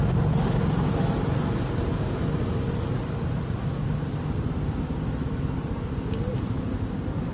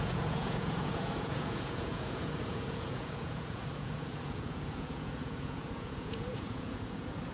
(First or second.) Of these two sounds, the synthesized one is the second